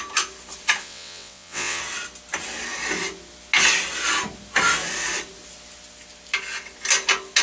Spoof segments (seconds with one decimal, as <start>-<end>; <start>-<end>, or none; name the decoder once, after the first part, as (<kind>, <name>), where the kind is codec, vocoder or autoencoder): 0.8-1.8 (vocoder, WaveNeXt)